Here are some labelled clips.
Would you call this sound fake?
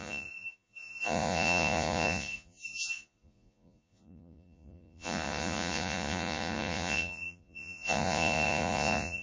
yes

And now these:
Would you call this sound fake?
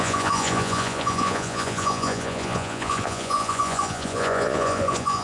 yes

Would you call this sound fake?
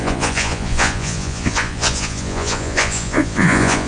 yes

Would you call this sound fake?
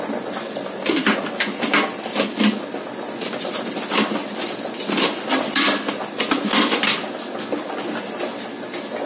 no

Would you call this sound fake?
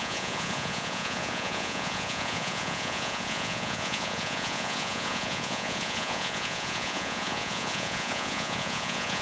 yes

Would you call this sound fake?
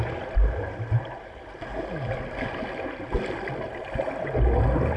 no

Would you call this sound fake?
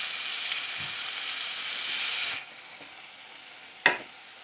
no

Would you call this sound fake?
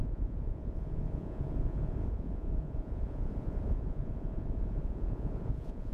yes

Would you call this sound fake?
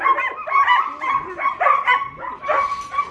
no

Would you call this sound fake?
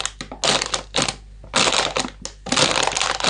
no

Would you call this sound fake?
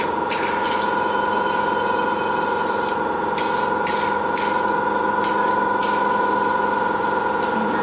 no